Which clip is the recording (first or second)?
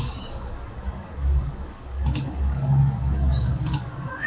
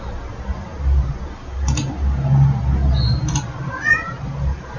second